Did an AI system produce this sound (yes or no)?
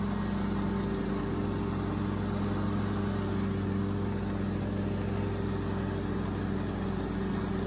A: no